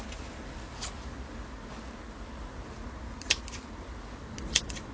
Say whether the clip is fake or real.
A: real